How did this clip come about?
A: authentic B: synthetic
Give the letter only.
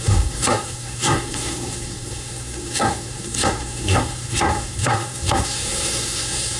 B